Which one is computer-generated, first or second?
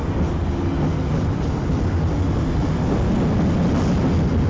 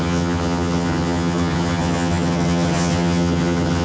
second